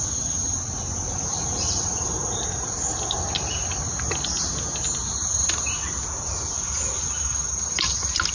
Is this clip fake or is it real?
real